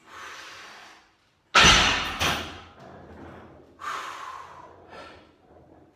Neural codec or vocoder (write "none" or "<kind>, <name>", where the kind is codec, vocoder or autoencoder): none